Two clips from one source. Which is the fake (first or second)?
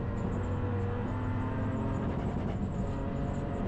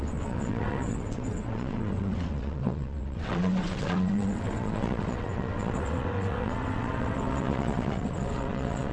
second